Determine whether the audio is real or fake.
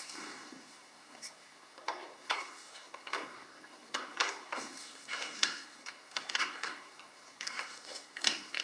fake